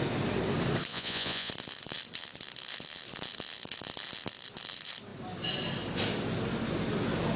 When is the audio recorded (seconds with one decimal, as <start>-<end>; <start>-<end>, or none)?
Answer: 0.0-0.9; 1.5-7.4